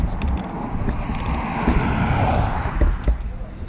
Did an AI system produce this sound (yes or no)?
no